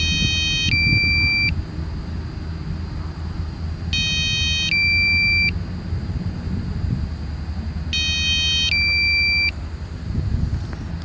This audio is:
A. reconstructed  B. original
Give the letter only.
B